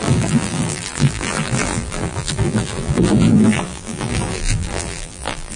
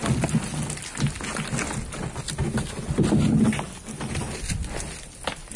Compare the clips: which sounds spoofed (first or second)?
first